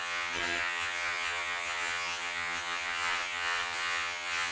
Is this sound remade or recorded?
remade